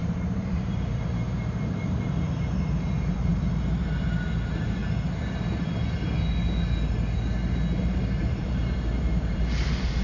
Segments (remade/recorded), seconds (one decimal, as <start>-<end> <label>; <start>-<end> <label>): 0.0-4.8 remade; 4.8-7.8 recorded; 7.8-10.0 remade

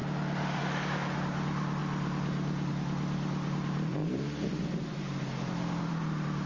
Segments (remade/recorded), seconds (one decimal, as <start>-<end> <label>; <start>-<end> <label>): 0.0-6.5 recorded

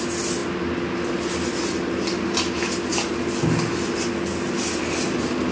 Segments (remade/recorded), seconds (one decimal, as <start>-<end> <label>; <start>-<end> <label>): 0.0-5.5 recorded